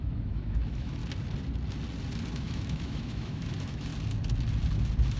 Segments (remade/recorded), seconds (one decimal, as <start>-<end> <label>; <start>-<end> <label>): 0.0-1.0 remade; 1.0-2.3 recorded; 2.3-3.9 remade; 3.9-5.2 recorded